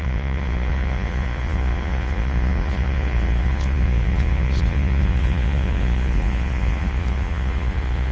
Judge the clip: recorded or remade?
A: remade